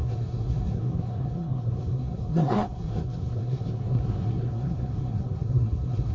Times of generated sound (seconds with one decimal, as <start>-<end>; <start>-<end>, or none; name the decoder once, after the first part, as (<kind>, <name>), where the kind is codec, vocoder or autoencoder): 0.0-6.1 (codec, SNAC)